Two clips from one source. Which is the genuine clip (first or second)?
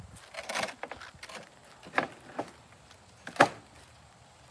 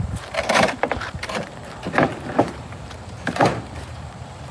first